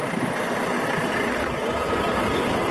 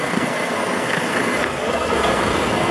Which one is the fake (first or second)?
second